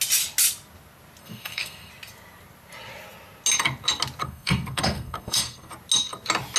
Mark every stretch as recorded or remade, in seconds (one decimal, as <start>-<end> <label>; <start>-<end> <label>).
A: 0.0-1.2 recorded; 1.2-1.9 remade; 1.9-4.2 recorded; 4.2-5.7 remade; 5.7-6.6 recorded